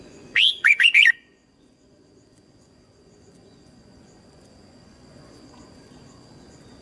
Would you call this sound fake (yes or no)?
yes